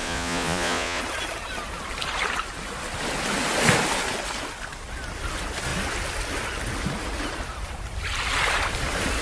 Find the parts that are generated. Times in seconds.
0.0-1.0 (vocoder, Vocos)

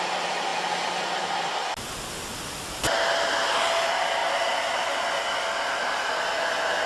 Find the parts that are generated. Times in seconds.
none